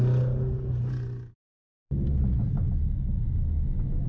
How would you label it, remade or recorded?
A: recorded